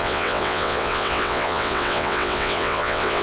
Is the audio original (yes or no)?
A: no